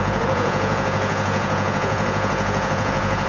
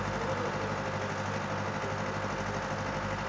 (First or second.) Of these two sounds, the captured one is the second